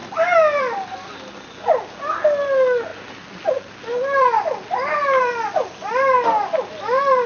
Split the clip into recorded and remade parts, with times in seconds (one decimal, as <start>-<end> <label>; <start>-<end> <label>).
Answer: 0.0-2.9 recorded; 2.9-7.3 remade